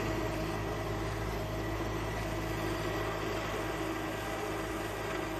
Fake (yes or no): no